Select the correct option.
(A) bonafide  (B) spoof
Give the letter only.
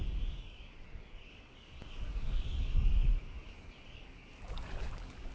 B